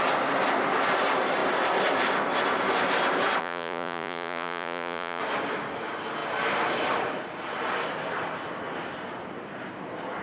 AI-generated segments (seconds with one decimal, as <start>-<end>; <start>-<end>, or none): 3.4-5.2